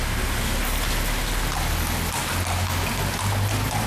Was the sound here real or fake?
real